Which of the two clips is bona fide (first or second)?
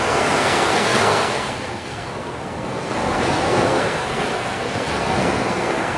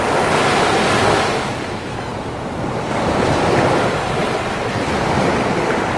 second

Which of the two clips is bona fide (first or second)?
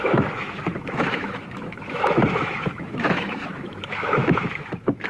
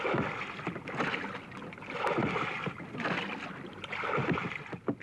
second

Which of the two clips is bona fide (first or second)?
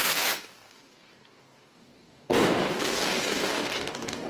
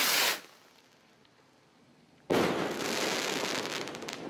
second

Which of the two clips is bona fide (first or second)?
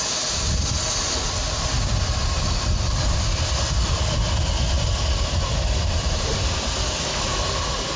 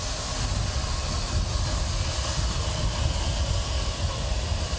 second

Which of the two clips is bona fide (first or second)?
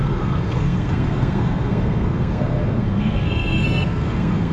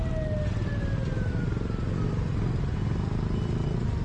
second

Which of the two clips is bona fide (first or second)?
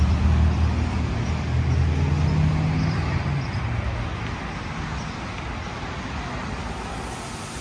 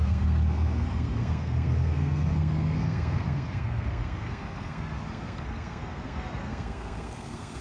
first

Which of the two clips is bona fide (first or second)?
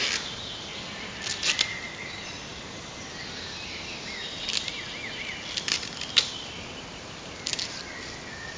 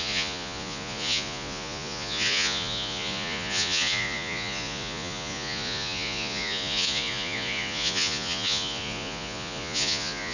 first